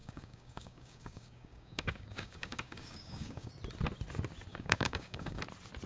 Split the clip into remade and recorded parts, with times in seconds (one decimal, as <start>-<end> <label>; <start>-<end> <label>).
0.0-3.5 remade; 3.5-4.5 recorded; 4.5-5.4 remade; 5.4-5.9 recorded